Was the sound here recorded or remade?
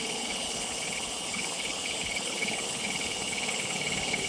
remade